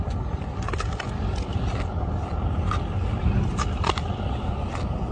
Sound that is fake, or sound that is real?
real